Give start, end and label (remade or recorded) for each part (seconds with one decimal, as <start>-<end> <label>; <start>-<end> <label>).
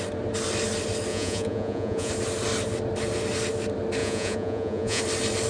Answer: 0.0-1.1 recorded; 1.1-2.1 remade; 2.1-4.0 recorded; 4.0-5.0 remade; 5.0-5.5 recorded